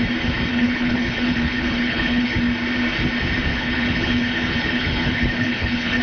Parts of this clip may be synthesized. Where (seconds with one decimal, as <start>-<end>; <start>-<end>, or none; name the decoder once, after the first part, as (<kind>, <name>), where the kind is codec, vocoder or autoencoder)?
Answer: 0.5-2.4 (codec, HILCodec); 3.5-6.0